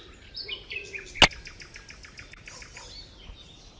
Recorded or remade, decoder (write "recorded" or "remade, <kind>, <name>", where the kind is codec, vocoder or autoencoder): recorded